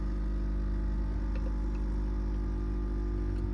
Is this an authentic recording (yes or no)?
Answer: yes